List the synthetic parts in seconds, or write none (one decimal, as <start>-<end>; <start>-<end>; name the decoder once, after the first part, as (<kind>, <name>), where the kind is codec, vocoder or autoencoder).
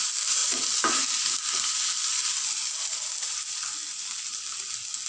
none